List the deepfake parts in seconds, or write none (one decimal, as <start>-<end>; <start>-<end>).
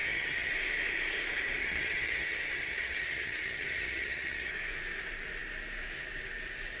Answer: 0.0-0.5; 1.6-4.5